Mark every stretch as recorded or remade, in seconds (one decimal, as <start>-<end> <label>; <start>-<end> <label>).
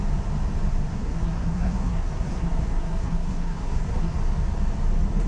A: 0.0-0.9 recorded; 0.9-4.1 remade; 4.1-5.3 recorded